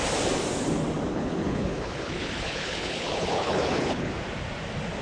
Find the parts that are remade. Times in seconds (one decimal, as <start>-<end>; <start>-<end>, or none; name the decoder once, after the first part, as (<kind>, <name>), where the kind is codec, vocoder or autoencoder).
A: 1.1-4.1 (codec, HILCodec)